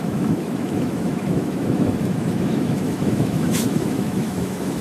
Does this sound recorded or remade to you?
remade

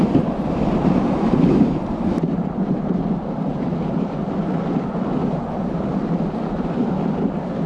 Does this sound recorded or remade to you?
recorded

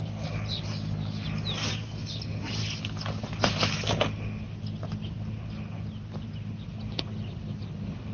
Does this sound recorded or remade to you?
recorded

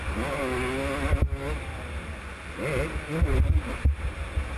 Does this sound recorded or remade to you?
recorded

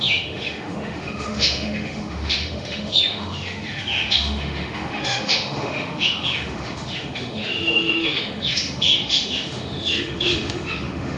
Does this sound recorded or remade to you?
remade